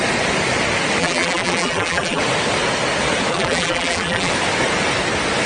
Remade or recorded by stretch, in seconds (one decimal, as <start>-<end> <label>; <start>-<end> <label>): 0.0-1.0 recorded; 1.0-2.2 remade; 2.2-3.3 recorded; 3.3-4.3 remade; 4.3-5.5 recorded